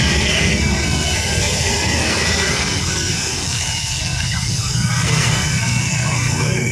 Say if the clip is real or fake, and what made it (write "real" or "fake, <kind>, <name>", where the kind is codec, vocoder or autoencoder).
fake, codec, SNAC